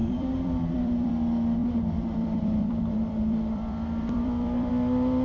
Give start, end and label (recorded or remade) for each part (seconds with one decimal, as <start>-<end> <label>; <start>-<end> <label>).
0.0-1.1 remade; 1.1-1.6 recorded; 1.6-4.7 remade; 4.7-5.2 recorded